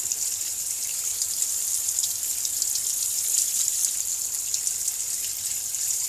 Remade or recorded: remade